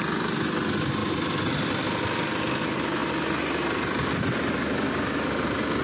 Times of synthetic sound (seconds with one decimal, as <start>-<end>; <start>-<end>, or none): none